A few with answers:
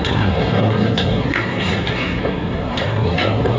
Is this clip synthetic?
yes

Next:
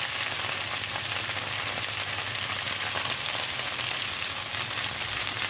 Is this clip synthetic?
no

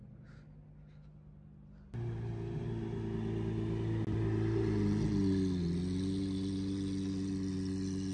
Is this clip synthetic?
no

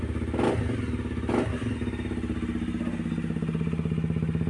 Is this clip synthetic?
no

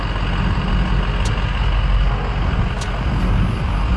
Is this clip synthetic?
no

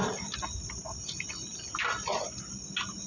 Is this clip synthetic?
no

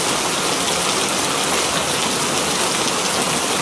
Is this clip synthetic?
no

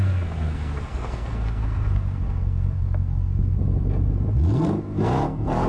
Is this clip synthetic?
yes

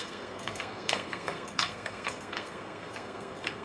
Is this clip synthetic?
yes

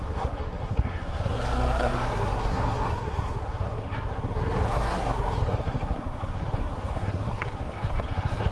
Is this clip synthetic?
yes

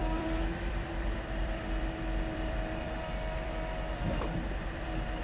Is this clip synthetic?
yes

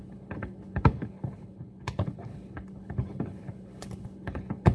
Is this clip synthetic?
yes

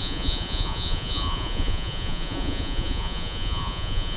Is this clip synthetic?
yes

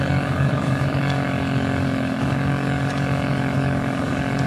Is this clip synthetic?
yes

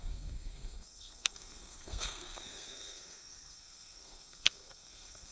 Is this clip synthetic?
yes